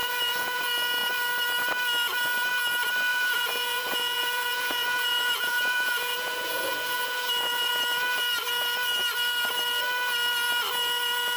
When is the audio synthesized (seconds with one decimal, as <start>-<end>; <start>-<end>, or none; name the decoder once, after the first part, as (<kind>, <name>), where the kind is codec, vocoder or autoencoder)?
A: 0.0-0.6 (vocoder, Vocos); 3.1-7.7